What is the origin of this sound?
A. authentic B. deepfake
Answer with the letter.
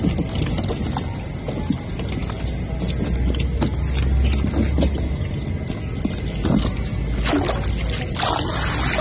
A